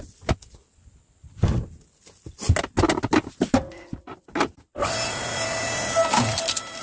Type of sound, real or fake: real